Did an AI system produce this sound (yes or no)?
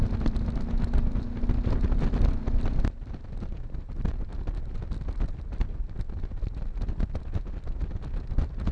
yes